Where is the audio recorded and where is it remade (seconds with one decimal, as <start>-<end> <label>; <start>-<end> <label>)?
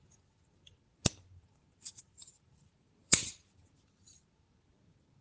0.0-1.6 recorded; 1.6-3.8 remade; 3.8-5.2 recorded